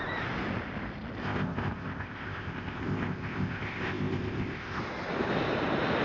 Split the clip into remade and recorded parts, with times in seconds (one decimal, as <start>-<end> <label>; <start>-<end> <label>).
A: 0.0-1.2 recorded; 1.2-4.8 remade; 4.8-6.0 recorded